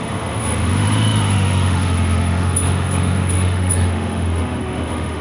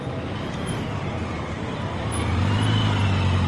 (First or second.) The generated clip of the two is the first